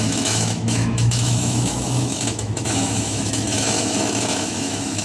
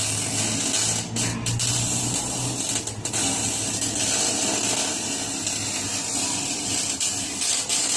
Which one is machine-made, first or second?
first